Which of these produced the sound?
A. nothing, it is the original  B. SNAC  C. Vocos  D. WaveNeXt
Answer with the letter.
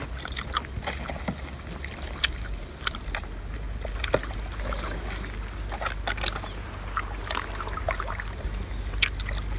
A